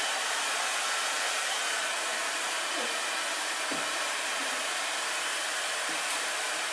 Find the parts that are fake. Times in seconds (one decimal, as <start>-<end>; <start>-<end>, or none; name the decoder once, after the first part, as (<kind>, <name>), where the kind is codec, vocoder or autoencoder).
0.0-0.6 (vocoder, BigVGAN v2); 2.1-2.7; 3.7-6.7